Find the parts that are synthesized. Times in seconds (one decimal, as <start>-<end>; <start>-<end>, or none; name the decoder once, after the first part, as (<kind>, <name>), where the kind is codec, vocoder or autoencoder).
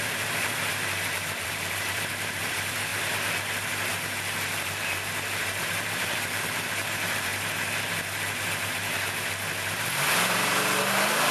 0.0-2.9 (vocoder, BigVGAN v2); 5.6-7.3; 10.0-11.3